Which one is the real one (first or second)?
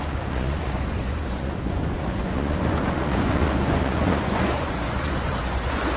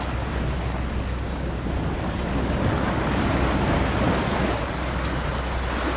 second